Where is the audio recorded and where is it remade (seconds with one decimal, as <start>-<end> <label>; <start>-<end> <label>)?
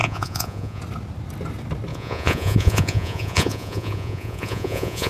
0.0-0.8 remade; 0.8-1.9 recorded; 1.9-5.1 remade